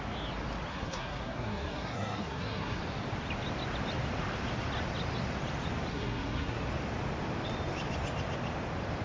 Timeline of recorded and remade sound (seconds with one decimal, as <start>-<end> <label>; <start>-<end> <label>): 0.0-0.7 recorded; 0.7-2.8 remade; 2.8-5.9 recorded; 5.9-6.7 remade; 6.7-9.0 recorded